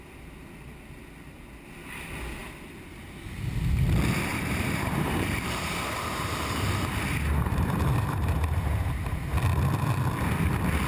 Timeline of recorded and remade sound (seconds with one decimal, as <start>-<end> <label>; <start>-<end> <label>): 0.0-4.3 recorded; 4.3-9.2 remade; 9.2-10.9 recorded